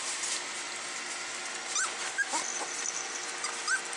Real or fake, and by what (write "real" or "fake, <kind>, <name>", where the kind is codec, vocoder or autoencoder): real